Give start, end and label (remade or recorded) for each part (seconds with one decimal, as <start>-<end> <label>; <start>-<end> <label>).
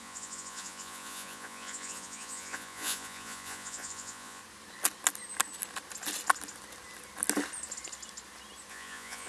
0.0-4.4 remade; 4.4-8.7 recorded; 8.7-9.3 remade